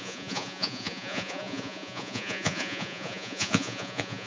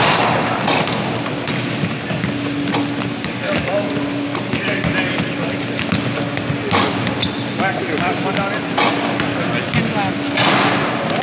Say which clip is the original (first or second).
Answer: second